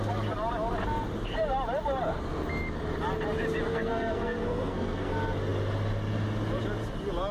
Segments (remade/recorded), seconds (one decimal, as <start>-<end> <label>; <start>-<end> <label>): 0.0-3.7 recorded; 3.7-5.1 remade; 5.1-7.3 recorded